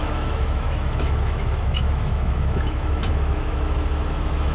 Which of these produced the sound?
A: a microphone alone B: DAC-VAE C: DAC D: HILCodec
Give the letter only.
B